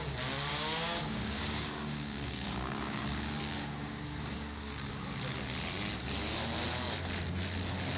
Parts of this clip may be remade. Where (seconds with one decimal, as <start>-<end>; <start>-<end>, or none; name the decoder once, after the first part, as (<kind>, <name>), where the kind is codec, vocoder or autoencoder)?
0.5-4.9 (codec, DAC)